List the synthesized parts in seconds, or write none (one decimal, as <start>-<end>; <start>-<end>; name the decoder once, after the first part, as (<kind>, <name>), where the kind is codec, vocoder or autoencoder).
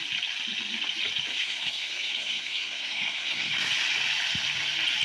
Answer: 1.3-3.7 (codec, SNAC)